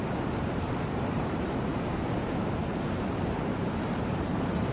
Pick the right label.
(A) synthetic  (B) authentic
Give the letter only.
A